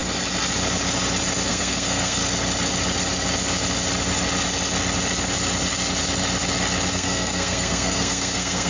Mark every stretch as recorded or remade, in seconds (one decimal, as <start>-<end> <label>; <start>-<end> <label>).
0.0-1.5 recorded; 1.5-2.2 remade; 2.2-6.9 recorded; 6.9-8.7 remade